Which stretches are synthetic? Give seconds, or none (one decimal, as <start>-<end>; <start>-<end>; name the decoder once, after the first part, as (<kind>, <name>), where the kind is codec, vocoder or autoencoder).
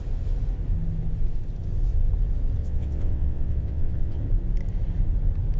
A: 2.6-4.2 (vocoder, WaveNeXt)